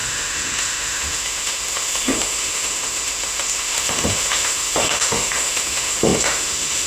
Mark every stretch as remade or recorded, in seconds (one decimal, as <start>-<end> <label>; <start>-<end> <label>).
0.0-6.9 remade

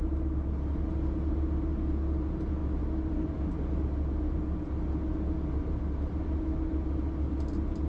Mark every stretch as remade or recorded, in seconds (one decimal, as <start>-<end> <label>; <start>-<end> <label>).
0.0-7.9 recorded